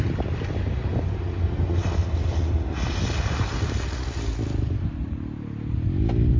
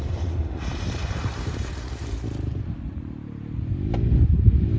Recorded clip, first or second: first